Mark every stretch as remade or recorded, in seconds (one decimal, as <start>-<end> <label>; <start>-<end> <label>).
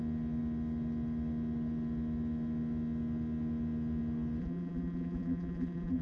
0.0-4.4 recorded; 4.4-6.0 remade